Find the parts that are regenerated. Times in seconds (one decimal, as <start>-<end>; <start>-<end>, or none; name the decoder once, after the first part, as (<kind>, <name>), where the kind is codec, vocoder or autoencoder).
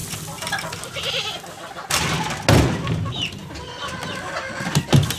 none